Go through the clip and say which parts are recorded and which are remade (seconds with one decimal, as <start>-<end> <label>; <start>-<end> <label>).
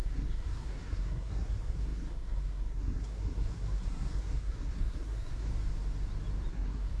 0.0-5.5 remade; 5.5-6.5 recorded; 6.5-7.0 remade